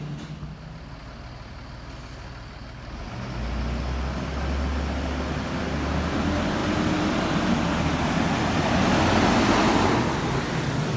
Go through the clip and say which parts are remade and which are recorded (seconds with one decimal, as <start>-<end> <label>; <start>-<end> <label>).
0.0-11.0 recorded